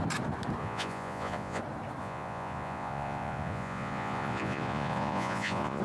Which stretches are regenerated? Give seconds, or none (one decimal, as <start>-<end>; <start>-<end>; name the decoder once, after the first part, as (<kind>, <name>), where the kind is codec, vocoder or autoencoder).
0.6-1.6 (vocoder, Vocos); 2.0-5.8